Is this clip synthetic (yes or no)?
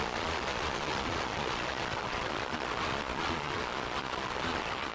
yes